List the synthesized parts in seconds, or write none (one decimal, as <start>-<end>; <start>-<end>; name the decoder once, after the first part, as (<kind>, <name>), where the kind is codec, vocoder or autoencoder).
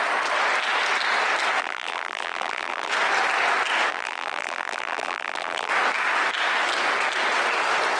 1.6-2.9 (vocoder, BigVGAN v2); 3.9-5.7